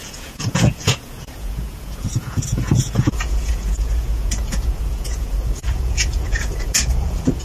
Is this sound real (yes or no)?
no